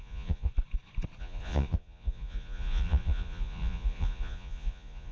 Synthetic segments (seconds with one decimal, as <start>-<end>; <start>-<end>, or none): 0.0-0.5; 1.2-5.1